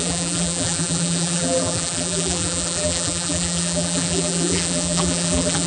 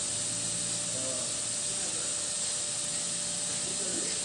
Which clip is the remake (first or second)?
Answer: first